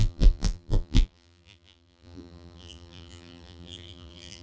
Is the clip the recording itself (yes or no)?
no